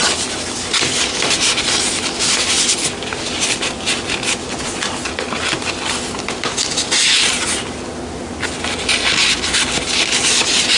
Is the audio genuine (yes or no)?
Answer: yes